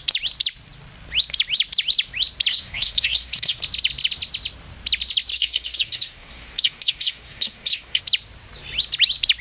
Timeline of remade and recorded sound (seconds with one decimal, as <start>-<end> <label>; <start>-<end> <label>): 0.0-2.5 recorded; 2.5-3.6 remade; 3.6-5.3 recorded; 5.3-8.0 remade; 8.0-9.4 recorded